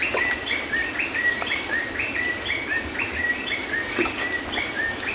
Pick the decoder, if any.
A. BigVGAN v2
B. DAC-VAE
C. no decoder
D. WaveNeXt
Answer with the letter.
C